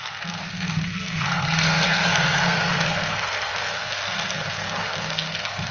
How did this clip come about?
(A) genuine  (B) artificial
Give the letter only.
B